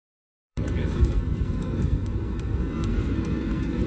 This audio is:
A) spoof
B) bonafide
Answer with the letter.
A